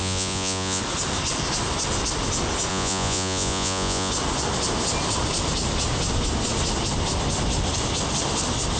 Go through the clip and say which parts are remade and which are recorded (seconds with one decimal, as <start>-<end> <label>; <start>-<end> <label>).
0.0-0.8 remade; 0.8-2.7 recorded; 2.7-4.1 remade; 4.1-8.8 recorded

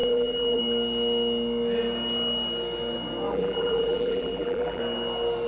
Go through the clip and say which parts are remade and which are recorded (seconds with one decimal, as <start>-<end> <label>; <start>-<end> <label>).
0.0-0.6 remade; 0.6-3.3 recorded; 3.3-4.8 remade; 4.8-5.5 recorded

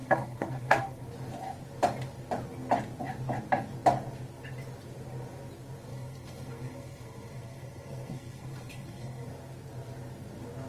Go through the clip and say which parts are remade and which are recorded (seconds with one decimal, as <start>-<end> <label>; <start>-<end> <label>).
0.0-1.0 remade; 1.0-5.9 recorded; 5.9-9.3 remade; 9.3-10.7 recorded

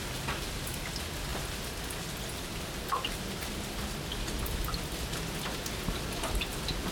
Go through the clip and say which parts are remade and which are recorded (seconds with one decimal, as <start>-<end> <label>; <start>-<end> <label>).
0.0-6.9 recorded